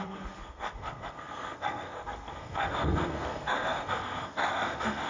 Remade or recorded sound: remade